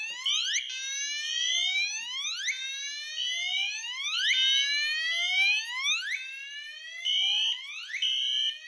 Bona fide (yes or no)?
yes